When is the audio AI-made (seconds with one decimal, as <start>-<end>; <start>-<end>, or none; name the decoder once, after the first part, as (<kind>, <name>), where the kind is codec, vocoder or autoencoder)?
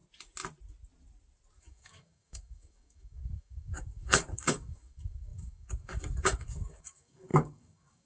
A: 1.6-8.1 (codec, DAC)